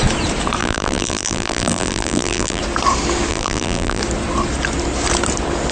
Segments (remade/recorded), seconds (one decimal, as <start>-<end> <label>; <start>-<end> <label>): 0.0-0.6 recorded; 0.6-2.6 remade; 2.6-3.3 recorded; 3.3-4.0 remade; 4.0-5.7 recorded